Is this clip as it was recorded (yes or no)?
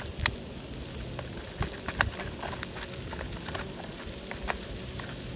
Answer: yes